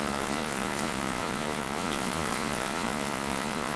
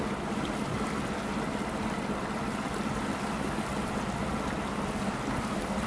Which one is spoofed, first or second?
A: first